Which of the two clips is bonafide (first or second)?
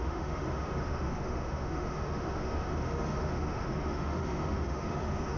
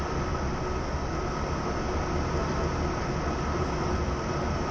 second